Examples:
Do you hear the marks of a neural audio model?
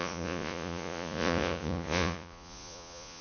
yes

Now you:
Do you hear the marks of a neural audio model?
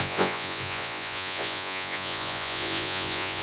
yes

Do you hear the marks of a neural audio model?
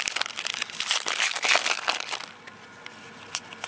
no